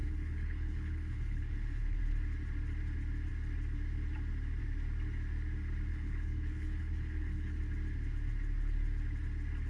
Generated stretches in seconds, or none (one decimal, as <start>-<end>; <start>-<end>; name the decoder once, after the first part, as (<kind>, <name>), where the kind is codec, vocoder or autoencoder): 0.0-2.0 (codec, HILCodec); 5.9-7.6